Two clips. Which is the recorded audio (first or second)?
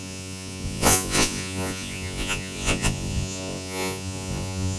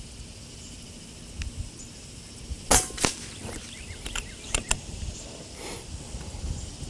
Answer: second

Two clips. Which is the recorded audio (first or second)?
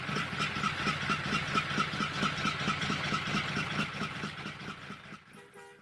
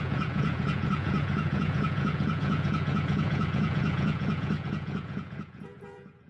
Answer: first